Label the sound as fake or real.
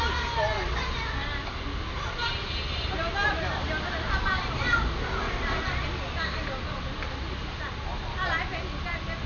real